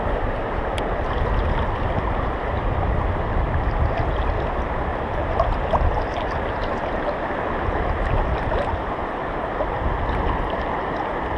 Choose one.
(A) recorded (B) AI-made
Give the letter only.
A